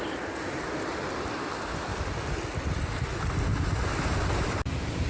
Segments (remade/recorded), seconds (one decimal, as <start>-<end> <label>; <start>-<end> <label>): 0.0-5.1 recorded